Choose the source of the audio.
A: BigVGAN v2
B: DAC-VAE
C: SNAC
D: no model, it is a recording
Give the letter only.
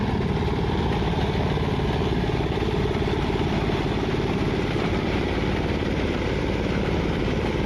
A